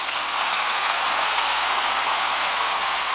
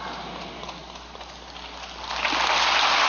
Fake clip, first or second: first